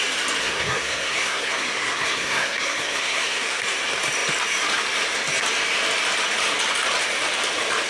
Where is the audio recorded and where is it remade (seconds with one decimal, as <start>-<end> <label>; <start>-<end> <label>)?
0.0-0.4 recorded; 0.4-3.6 remade; 3.6-7.9 recorded